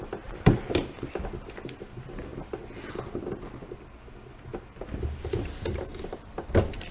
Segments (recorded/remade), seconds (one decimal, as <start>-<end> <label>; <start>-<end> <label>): 0.0-1.0 remade; 1.0-6.9 recorded